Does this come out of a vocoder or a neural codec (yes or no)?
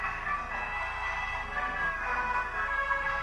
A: yes